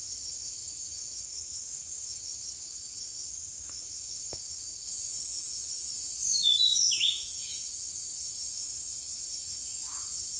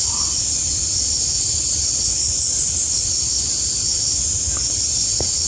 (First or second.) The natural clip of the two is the second